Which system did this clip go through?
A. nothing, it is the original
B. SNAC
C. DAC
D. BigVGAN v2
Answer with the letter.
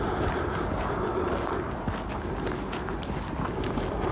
A